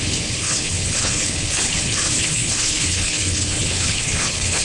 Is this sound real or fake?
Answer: fake